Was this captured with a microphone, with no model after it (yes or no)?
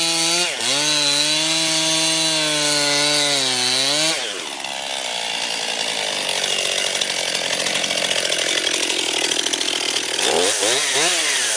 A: yes